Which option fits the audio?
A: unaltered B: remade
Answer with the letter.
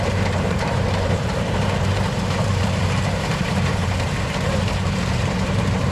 B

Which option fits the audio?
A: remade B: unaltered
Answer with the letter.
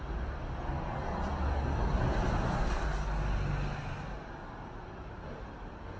B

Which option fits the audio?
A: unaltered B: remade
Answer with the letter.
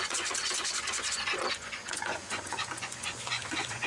B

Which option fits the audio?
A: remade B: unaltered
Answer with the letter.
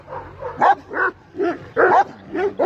A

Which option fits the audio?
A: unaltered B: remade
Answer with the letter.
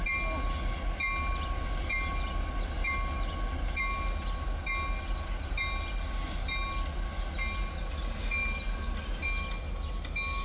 A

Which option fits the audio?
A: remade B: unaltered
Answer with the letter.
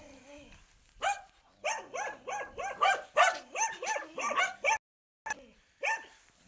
B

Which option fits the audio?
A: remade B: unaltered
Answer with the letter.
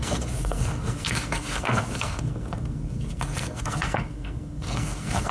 A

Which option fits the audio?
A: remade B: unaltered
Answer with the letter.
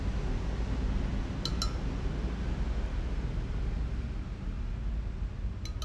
B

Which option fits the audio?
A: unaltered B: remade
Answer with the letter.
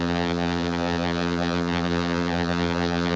B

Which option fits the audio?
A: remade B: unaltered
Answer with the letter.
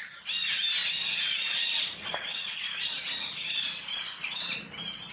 A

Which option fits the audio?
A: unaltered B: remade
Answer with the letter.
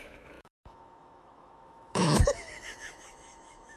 B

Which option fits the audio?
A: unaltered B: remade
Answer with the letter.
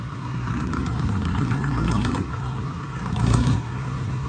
B